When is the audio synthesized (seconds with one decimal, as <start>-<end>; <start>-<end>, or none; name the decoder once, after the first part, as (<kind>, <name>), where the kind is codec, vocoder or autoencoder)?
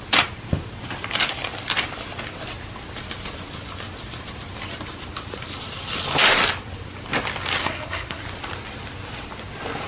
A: 7.6-8.2 (codec, SNAC)